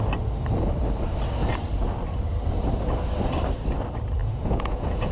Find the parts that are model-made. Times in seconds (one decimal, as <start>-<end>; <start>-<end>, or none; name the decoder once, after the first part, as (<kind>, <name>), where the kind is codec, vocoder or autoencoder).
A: 4.2-5.1 (vocoder, Vocos)